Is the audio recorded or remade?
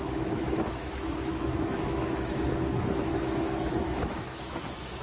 remade